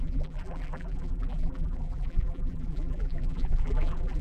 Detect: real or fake fake